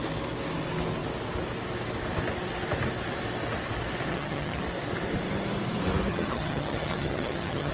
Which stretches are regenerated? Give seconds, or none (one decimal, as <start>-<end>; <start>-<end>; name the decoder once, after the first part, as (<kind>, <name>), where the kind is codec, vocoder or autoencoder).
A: 4.1-4.6 (vocoder, HiFi-GAN); 6.1-7.7